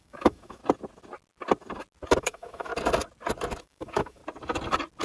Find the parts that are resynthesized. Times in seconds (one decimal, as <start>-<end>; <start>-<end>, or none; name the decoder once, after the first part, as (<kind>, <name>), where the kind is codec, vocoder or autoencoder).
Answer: 0.0-0.6 (autoencoder, DAC-VAE); 2.2-2.7; 3.6-4.2